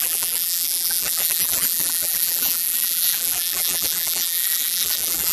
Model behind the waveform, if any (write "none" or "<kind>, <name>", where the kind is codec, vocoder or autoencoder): vocoder, BigVGAN v2